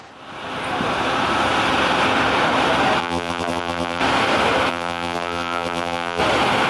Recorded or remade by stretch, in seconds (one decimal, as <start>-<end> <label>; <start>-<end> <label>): 0.0-3.0 recorded; 3.0-4.0 remade; 4.0-4.7 recorded; 4.7-6.2 remade; 6.2-6.7 recorded